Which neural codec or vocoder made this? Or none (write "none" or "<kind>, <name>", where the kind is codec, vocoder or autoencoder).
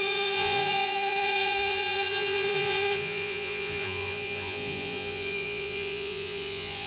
vocoder, Vocos